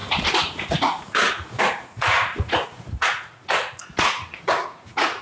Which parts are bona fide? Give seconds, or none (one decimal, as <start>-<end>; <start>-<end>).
none